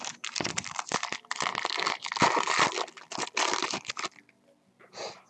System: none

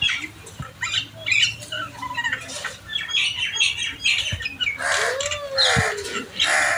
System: none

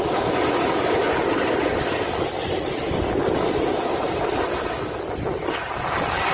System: none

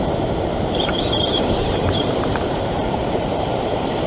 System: vocoder, BigVGAN v2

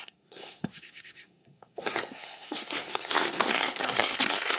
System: codec, SNAC